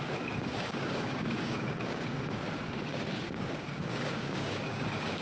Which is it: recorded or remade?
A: remade